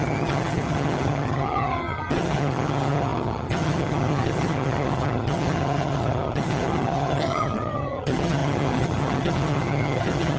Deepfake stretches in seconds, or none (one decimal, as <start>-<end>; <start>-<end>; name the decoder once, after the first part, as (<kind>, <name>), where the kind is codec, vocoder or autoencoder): 0.0-10.4 (vocoder, HiFi-GAN)